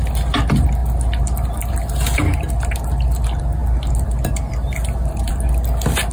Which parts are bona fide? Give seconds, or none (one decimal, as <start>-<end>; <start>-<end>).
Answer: 0.0-6.1